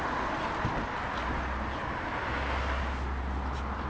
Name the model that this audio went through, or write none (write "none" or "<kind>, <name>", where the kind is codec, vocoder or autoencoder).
none